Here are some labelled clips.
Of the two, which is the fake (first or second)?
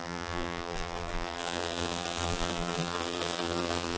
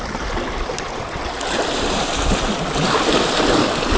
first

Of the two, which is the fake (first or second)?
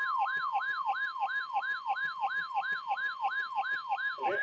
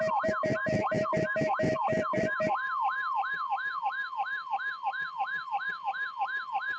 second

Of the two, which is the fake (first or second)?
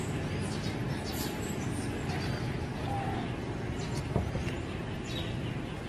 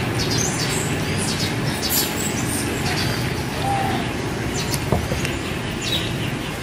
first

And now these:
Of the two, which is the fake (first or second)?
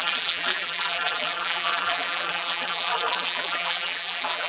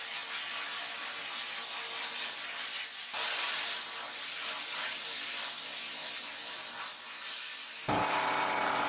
first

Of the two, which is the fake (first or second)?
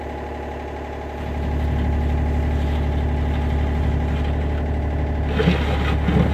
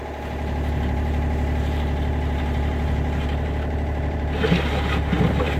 second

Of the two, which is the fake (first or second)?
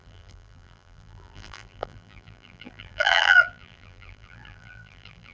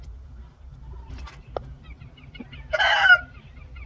first